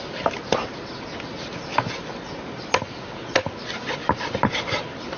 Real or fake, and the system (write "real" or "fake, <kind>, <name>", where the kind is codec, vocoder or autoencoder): real